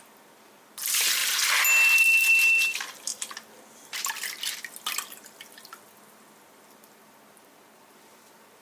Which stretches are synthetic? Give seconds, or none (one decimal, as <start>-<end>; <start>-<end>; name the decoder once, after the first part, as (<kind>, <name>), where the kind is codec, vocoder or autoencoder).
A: none